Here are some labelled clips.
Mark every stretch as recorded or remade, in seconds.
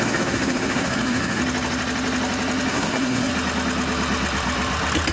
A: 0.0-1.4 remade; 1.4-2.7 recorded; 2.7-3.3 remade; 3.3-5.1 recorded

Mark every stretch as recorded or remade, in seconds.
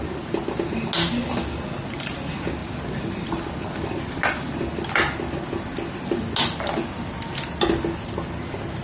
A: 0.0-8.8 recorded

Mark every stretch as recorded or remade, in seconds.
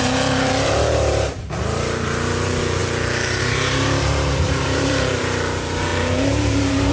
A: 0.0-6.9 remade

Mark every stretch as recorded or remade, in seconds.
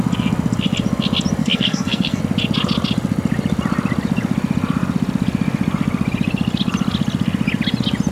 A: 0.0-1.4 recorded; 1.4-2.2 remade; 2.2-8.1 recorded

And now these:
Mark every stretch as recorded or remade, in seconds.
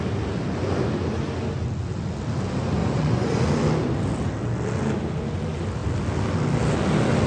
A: 0.0-2.8 recorded; 2.8-3.4 remade; 3.4-7.3 recorded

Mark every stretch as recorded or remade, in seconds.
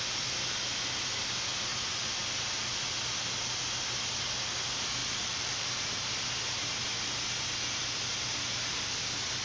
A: 0.0-5.0 recorded; 5.0-5.8 remade; 5.8-9.4 recorded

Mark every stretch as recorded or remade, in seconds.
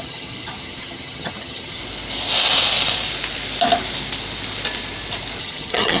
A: 0.0-1.8 remade; 1.8-5.4 recorded; 5.4-6.0 remade